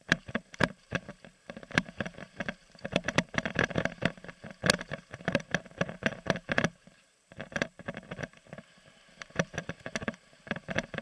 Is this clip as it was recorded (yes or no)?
no